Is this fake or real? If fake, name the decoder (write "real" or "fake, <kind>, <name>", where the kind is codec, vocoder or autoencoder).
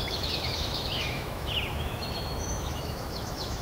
fake, autoencoder, DAC-VAE